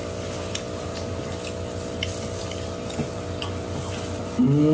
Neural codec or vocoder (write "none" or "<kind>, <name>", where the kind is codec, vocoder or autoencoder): none